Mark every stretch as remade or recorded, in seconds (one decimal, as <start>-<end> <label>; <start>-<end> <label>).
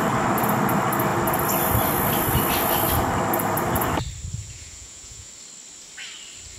0.0-4.4 recorded; 4.4-5.3 remade; 5.3-6.6 recorded